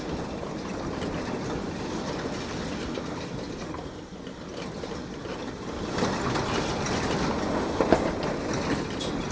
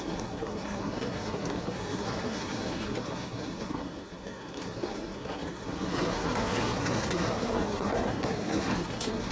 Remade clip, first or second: second